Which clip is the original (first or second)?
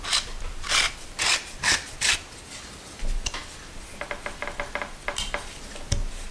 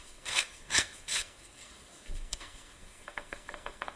first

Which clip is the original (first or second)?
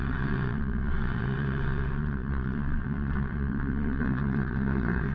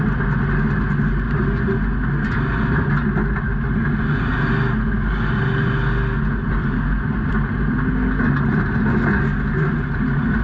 second